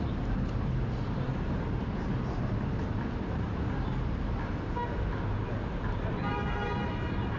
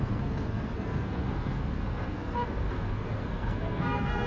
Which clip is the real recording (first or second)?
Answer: first